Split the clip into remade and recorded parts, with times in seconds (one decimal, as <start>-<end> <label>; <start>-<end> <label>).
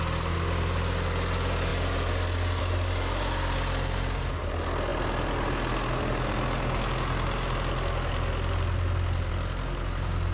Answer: 0.0-10.3 recorded